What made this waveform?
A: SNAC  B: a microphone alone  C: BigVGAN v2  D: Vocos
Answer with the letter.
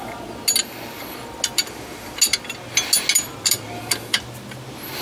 B